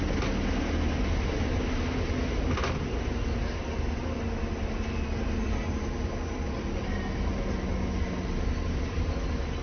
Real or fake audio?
real